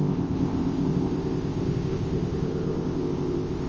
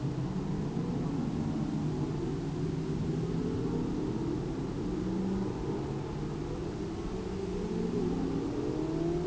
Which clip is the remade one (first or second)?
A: first